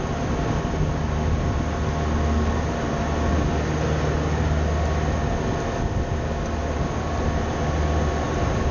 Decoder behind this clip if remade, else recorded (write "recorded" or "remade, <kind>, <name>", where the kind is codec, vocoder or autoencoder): recorded